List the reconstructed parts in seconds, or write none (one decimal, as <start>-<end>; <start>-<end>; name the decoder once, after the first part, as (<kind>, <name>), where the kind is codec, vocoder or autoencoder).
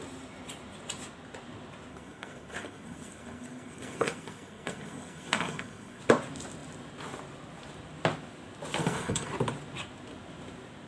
1.9-6.0 (codec, SNAC); 8.8-9.3